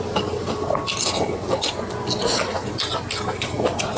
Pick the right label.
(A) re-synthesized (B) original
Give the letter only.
B